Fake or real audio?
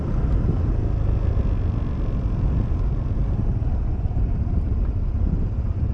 real